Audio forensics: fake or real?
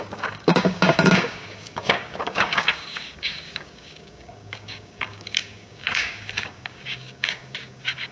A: fake